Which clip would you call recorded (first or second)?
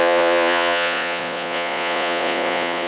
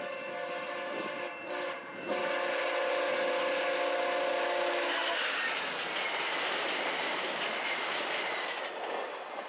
second